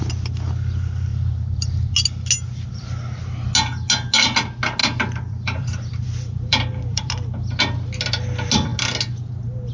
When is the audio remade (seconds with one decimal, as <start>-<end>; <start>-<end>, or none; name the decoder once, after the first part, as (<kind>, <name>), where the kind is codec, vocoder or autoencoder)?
1.1-1.9 (vocoder, BigVGAN v2); 4.8-7.1